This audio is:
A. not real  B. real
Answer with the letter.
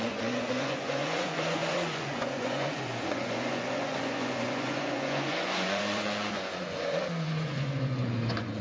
A